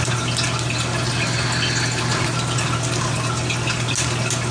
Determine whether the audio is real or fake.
real